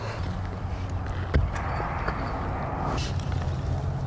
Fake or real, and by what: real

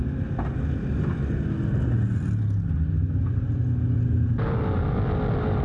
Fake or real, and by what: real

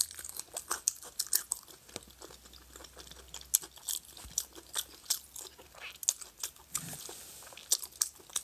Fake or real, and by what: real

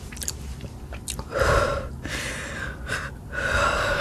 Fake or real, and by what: fake, vocoder, BigVGAN v2